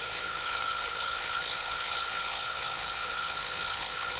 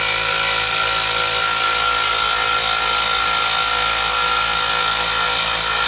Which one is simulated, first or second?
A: first